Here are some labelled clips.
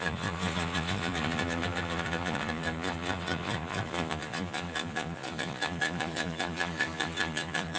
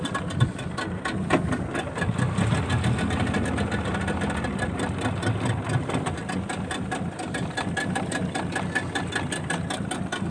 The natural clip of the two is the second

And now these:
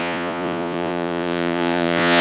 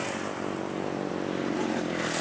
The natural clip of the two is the second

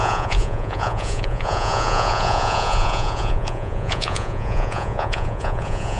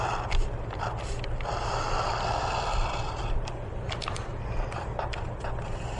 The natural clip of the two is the second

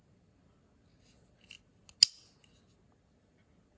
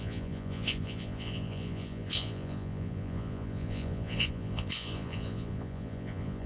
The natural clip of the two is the first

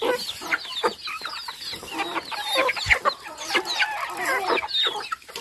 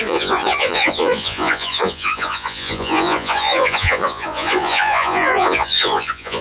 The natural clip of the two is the first